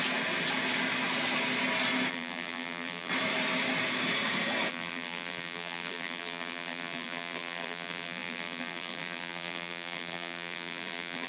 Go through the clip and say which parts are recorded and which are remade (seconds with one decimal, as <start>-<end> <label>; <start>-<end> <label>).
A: 0.0-2.1 recorded; 2.1-3.1 remade; 3.1-4.7 recorded; 4.7-11.3 remade